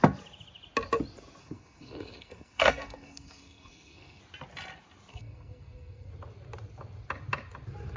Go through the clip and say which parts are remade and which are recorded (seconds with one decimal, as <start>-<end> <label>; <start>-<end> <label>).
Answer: 0.0-1.4 recorded; 1.4-4.2 remade; 4.2-5.1 recorded; 5.1-6.1 remade; 6.1-8.0 recorded